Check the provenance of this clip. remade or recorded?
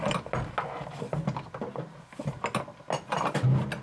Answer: recorded